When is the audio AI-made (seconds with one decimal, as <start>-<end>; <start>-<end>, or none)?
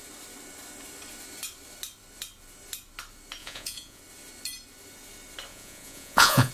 3.4-4.0; 5.5-6.5